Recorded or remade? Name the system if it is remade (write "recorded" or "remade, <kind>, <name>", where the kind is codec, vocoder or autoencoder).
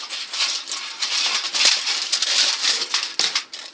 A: recorded